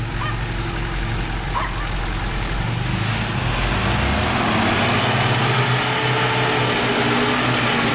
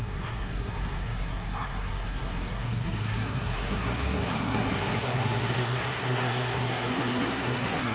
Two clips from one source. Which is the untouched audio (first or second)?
first